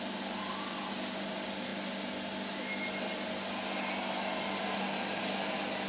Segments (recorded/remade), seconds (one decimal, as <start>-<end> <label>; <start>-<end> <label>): 0.0-5.9 recorded

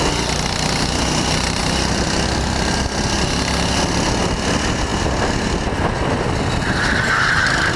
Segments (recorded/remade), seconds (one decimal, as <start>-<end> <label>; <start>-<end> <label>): 0.0-7.8 recorded

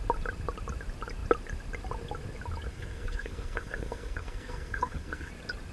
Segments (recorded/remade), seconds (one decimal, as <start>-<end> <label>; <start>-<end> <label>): 0.0-2.7 recorded; 2.7-5.3 remade; 5.3-5.7 recorded

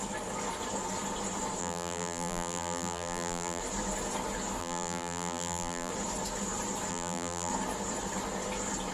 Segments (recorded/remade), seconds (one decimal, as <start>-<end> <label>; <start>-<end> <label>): 0.0-1.6 recorded; 1.6-3.6 remade; 3.6-4.6 recorded; 4.6-5.9 remade; 5.9-6.9 recorded; 6.9-7.5 remade; 7.5-8.9 recorded

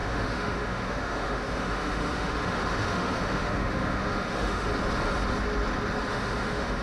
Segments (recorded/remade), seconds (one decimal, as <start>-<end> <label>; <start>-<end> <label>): 0.0-4.7 remade; 4.7-6.1 recorded; 6.1-6.8 remade

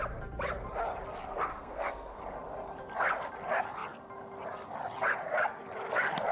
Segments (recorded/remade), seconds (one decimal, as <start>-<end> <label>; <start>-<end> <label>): 0.0-1.5 recorded; 1.5-2.2 remade; 2.2-6.3 recorded

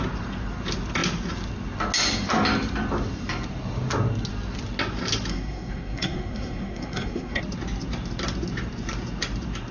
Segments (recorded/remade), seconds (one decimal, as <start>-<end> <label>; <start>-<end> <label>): 0.0-5.3 recorded; 5.3-7.4 remade; 7.4-9.7 recorded